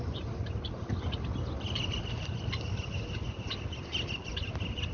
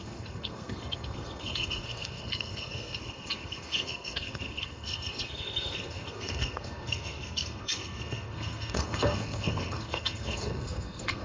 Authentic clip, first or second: first